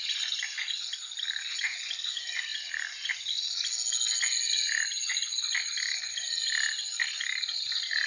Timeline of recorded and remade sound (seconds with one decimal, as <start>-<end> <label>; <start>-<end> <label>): 0.0-8.1 recorded